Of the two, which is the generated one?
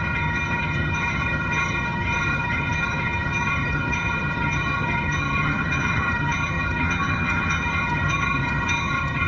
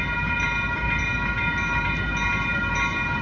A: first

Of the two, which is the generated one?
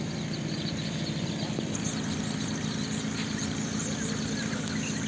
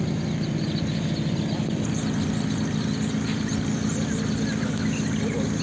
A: first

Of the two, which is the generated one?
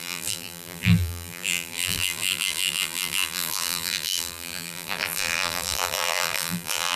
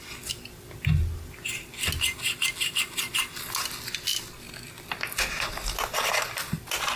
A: first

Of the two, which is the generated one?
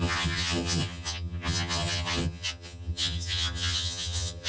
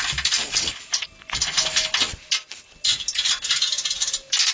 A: first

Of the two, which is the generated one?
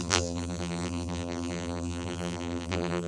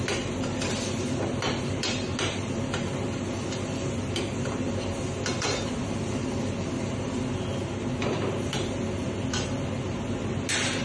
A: first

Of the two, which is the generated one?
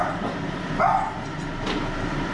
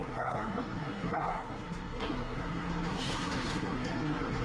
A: second